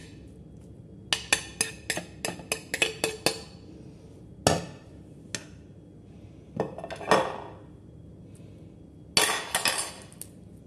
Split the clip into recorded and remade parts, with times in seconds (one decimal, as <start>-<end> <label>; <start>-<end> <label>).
0.0-10.7 recorded

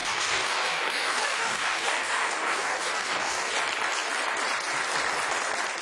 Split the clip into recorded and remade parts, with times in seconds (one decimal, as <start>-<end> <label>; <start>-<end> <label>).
0.0-3.5 remade; 3.5-5.8 recorded

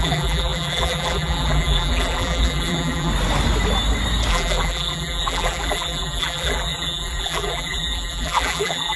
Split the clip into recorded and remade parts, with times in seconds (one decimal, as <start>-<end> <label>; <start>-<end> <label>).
0.0-3.1 remade; 3.1-4.3 recorded; 4.3-9.0 remade

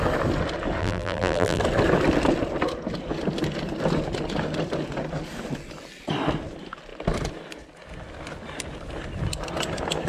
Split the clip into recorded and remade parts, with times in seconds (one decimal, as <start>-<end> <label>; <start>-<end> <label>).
0.0-0.8 recorded; 0.8-1.6 remade; 1.6-10.1 recorded

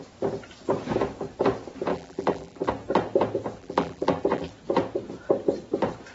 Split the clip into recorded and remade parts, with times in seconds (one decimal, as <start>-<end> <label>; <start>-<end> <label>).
0.0-1.9 recorded; 1.9-2.7 remade; 2.7-3.6 recorded; 3.6-4.5 remade; 4.5-6.1 recorded

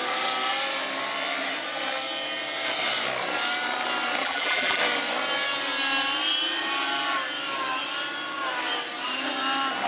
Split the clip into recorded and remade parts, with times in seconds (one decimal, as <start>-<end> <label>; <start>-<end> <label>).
0.0-4.2 recorded; 4.2-4.8 remade; 4.8-9.9 recorded

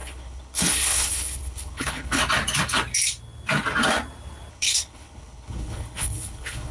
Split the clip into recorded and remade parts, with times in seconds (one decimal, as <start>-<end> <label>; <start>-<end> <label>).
0.0-2.2 remade; 2.2-4.5 recorded; 4.5-6.7 remade